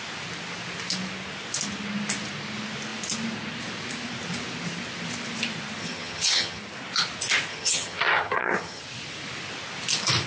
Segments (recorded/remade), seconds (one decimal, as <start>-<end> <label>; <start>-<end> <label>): 0.0-5.8 recorded; 5.8-6.6 remade; 6.6-7.5 recorded; 7.5-8.8 remade; 8.8-10.3 recorded